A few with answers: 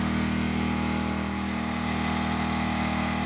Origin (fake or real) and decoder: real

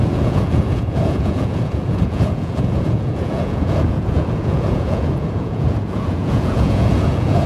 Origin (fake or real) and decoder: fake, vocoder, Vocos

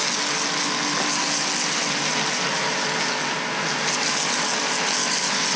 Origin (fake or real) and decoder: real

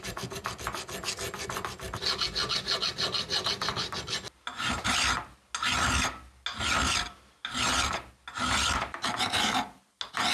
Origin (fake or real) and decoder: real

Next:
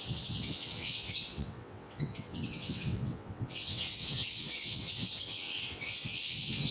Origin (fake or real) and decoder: fake, vocoder, WaveNeXt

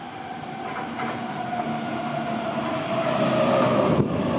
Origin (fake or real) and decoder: real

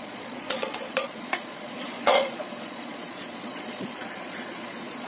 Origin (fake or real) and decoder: fake, vocoder, Vocos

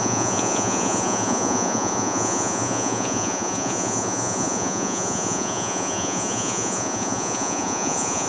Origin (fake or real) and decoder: fake, vocoder, Vocos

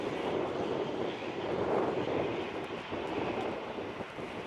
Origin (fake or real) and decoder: real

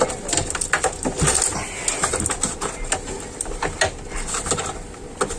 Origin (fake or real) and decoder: real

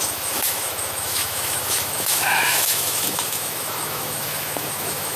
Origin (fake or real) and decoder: fake, autoencoder, DAC-VAE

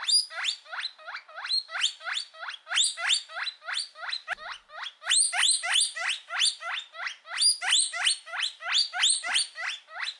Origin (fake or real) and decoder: real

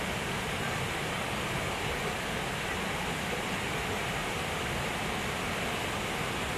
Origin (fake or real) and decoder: real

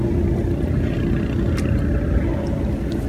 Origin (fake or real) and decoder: real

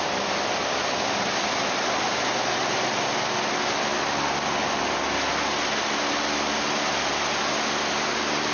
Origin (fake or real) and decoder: real